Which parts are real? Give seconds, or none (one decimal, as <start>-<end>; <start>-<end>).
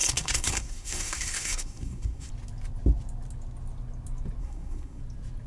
2.3-4.4; 5.0-5.5